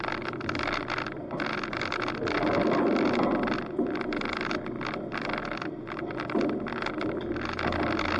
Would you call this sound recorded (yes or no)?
yes